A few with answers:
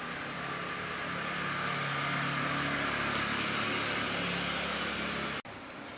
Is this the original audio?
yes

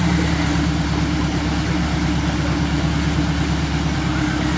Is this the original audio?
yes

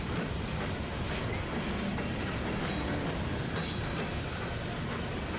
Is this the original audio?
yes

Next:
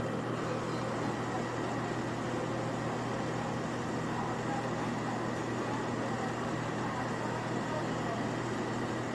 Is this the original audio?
yes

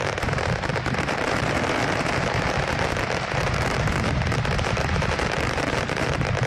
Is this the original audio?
no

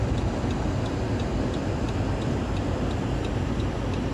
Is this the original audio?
yes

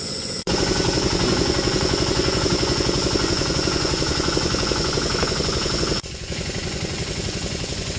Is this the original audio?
no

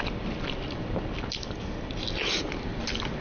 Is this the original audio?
yes